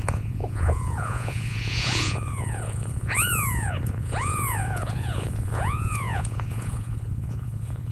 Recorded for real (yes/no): no